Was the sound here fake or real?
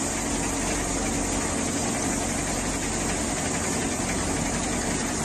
real